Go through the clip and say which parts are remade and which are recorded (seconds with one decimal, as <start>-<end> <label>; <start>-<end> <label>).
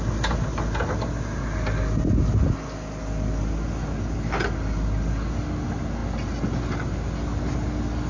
0.0-8.1 recorded